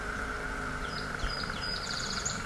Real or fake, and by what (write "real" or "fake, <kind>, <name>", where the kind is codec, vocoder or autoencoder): fake, vocoder, BigVGAN v2